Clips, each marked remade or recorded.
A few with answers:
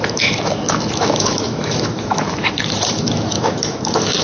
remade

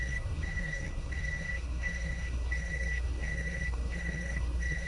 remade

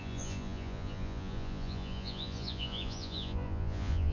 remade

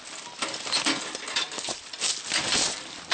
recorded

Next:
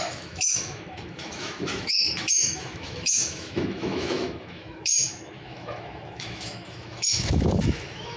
remade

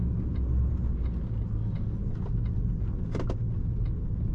recorded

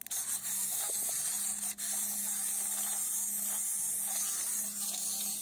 recorded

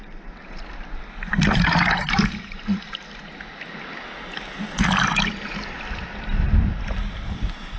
recorded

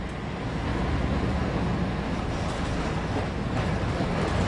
recorded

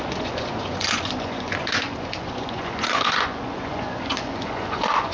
remade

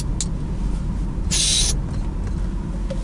recorded